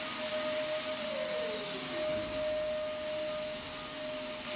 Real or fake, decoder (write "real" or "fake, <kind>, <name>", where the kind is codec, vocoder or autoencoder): real